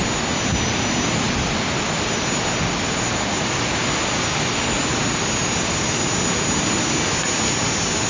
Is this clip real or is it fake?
real